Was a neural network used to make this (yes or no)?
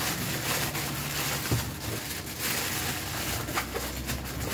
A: no